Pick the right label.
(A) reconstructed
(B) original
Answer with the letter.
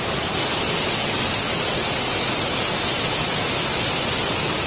B